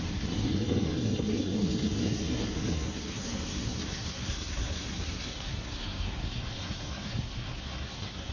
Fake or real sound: fake